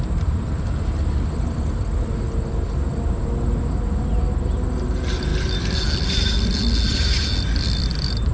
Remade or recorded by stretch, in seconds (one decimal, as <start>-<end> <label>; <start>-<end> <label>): 0.0-8.3 recorded